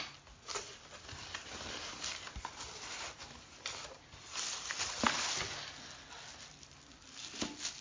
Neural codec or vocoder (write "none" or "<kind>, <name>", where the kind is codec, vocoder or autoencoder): none